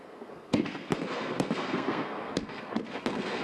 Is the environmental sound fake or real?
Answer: fake